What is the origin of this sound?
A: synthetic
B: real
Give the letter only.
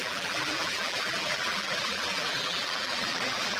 A